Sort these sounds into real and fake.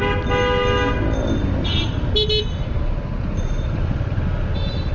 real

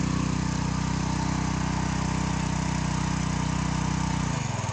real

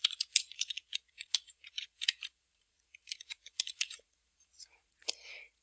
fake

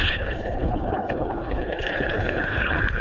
fake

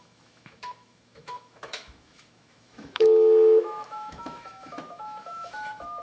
fake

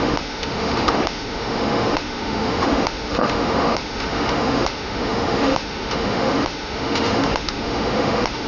fake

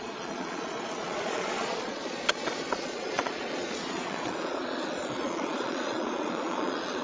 fake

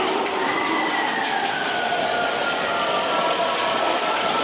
real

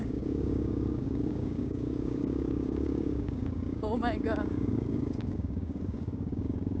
fake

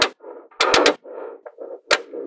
real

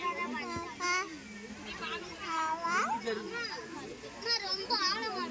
real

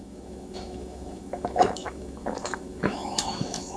fake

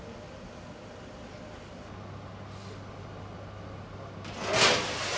real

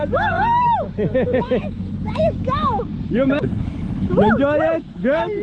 fake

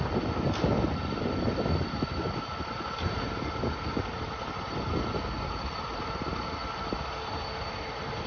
real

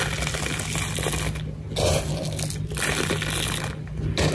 real